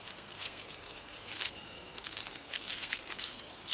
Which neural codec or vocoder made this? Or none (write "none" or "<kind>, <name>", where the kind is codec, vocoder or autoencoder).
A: codec, SNAC